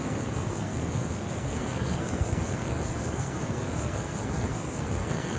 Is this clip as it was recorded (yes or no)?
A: no